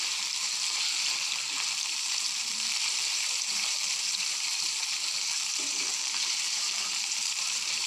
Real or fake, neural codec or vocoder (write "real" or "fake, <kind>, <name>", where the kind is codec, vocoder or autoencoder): fake, vocoder, BigVGAN v2